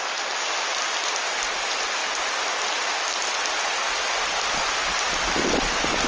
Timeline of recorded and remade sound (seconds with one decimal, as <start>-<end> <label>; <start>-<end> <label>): 0.0-6.1 recorded